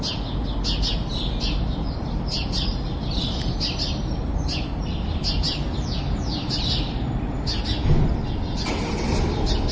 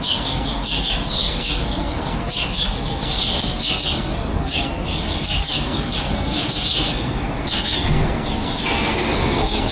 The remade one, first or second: second